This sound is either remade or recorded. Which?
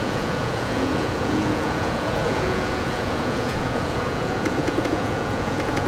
remade